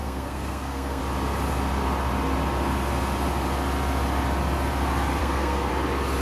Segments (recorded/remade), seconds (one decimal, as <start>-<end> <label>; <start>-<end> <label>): 0.0-1.0 remade; 1.0-5.2 recorded; 5.2-5.7 remade; 5.7-6.2 recorded

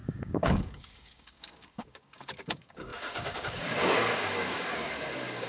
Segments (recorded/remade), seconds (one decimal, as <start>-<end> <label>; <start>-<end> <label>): 0.0-5.5 remade

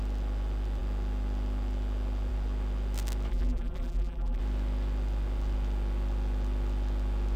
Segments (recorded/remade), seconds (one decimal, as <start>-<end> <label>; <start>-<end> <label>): 0.0-3.3 recorded; 3.3-4.4 remade; 4.4-7.4 recorded

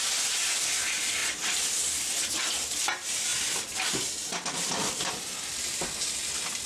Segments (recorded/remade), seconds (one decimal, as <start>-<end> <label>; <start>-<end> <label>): 0.0-3.3 recorded; 3.3-5.1 remade; 5.1-6.7 recorded

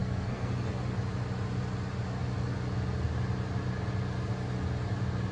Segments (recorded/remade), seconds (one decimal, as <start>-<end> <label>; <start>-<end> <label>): 0.0-0.5 remade; 0.5-5.3 recorded

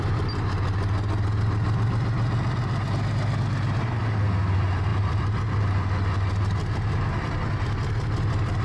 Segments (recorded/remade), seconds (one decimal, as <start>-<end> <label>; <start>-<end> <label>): 0.0-4.9 recorded; 4.9-5.6 remade; 5.6-8.6 recorded

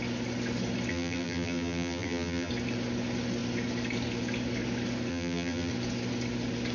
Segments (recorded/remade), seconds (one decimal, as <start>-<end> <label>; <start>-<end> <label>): 0.0-0.9 recorded; 0.9-2.5 remade; 2.5-5.1 recorded; 5.1-5.7 remade; 5.7-6.7 recorded